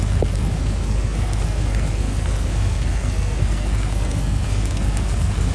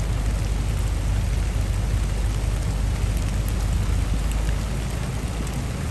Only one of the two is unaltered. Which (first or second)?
second